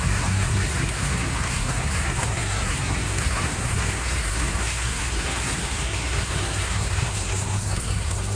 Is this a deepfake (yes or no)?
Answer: yes